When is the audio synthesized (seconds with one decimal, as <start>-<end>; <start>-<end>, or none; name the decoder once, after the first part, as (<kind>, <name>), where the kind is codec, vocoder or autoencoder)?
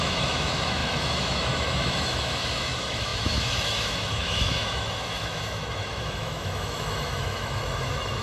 0.0-8.2 (autoencoder, DAC-VAE)